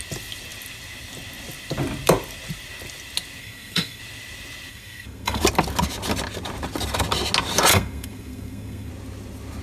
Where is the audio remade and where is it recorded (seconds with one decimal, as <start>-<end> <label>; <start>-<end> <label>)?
0.0-3.4 recorded; 3.4-4.0 remade; 4.0-4.7 recorded; 4.7-5.4 remade; 5.4-7.7 recorded; 7.7-8.9 remade; 8.9-9.6 recorded